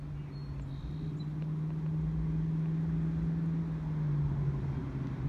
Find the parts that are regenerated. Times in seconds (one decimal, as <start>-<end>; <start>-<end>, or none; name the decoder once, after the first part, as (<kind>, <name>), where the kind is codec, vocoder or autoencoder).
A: none